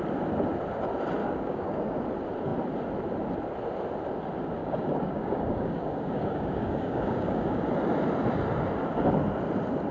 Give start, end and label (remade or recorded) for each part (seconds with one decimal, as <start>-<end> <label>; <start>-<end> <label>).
0.0-1.2 recorded; 1.2-2.0 remade; 2.0-4.6 recorded; 4.6-7.6 remade; 7.6-9.9 recorded